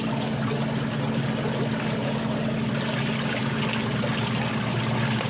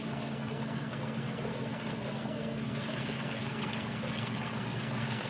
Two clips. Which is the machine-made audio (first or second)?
second